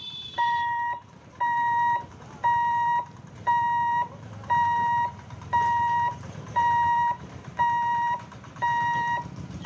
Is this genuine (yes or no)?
no